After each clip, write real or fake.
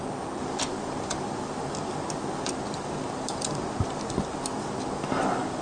real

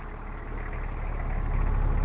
real